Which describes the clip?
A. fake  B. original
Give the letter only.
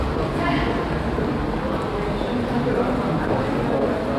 B